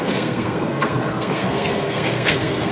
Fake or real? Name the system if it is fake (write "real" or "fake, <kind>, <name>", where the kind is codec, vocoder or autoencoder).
fake, codec, SNAC